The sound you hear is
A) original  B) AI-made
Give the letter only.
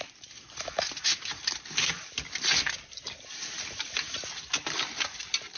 A